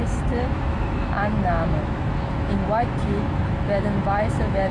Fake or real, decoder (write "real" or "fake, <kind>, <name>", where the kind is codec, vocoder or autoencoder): fake, autoencoder, DAC-VAE